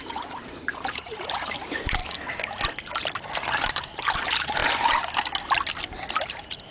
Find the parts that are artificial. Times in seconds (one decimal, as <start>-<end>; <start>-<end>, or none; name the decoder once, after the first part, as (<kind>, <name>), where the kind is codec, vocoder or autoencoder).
0.0-2.0 (vocoder, BigVGAN v2); 3.7-4.6; 6.3-6.7